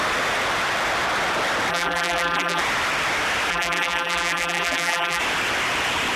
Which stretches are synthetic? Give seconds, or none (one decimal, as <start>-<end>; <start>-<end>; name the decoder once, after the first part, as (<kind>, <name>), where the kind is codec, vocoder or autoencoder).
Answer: 1.7-2.6 (vocoder, BigVGAN v2); 3.5-5.2